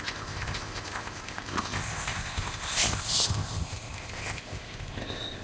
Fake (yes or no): yes